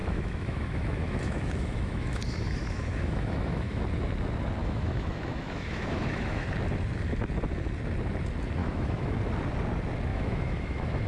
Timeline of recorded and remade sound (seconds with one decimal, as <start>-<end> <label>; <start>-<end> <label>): 0.0-3.8 remade; 3.8-4.6 recorded; 4.6-6.5 remade; 6.5-8.6 recorded; 8.6-9.1 remade; 9.1-10.1 recorded; 10.1-11.1 remade